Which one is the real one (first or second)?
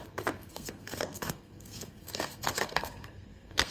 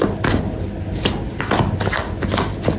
second